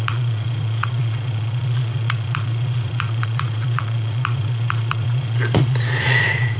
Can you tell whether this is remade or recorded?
remade